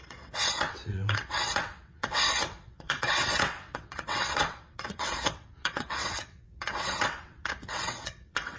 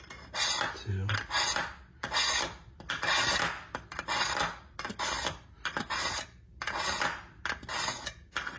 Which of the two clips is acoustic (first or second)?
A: second